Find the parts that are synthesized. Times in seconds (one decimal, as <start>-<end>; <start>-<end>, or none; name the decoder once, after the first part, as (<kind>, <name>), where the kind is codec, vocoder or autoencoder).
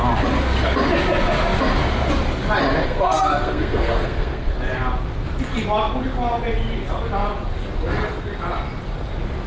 2.8-4.5 (codec, SNAC)